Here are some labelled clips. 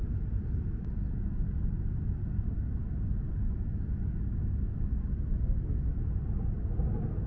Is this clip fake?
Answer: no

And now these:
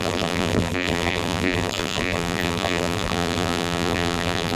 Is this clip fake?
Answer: yes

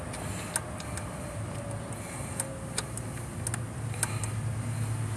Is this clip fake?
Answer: no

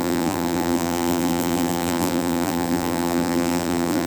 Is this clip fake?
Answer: yes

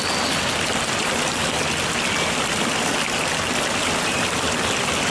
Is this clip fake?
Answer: no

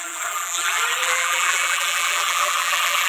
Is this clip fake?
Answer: yes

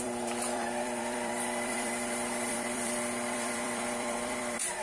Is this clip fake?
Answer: yes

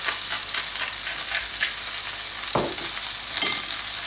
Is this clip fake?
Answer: no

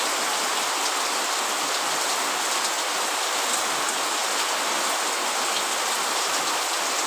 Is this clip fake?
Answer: no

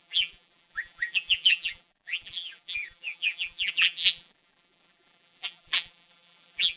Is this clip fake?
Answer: yes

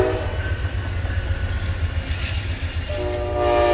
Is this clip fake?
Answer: no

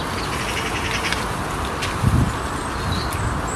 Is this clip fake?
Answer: no